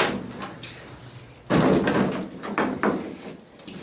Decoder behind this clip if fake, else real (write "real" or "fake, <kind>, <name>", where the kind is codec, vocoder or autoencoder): real